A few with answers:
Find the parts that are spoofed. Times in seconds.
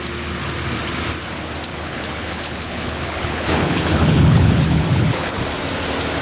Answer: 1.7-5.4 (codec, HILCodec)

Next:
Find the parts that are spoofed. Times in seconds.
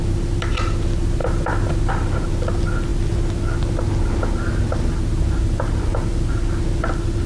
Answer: none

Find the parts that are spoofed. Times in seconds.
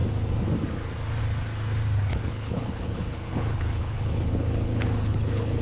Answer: 2.1-5.6 (codec, HILCodec)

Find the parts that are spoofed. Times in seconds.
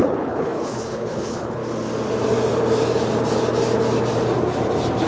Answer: 0.0-1.6 (codec, HILCodec)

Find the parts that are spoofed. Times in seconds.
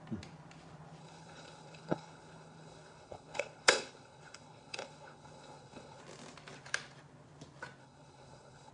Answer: 1.0-6.0 (codec, HILCodec); 7.8-8.7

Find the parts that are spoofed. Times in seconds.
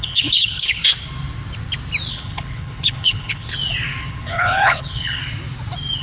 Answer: 0.0-0.8 (codec, HILCodec); 2.1-3.5; 4.1-5.2